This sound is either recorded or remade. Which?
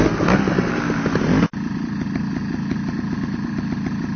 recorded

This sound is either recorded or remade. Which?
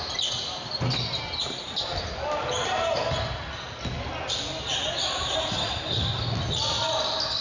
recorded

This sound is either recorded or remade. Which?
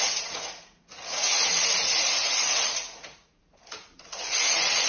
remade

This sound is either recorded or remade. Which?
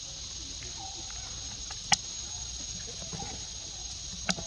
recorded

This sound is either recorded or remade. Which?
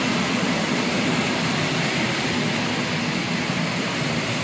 recorded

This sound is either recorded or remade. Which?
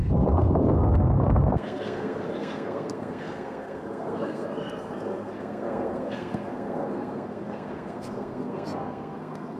remade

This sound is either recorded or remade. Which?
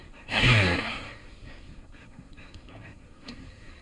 remade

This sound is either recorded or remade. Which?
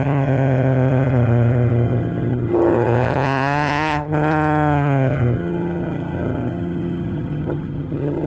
remade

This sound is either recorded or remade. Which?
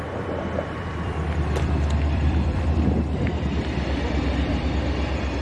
remade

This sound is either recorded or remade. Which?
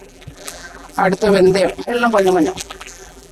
remade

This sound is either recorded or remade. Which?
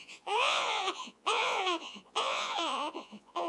remade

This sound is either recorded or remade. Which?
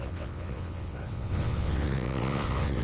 remade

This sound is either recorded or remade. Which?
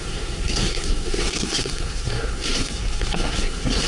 remade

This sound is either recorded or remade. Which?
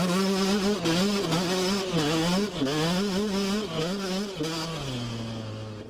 recorded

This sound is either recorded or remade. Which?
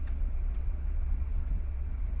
remade